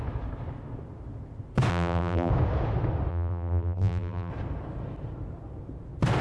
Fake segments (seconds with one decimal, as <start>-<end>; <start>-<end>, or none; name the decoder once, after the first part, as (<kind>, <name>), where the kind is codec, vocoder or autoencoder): 1.7-2.3 (vocoder, BigVGAN v2); 3.1-4.3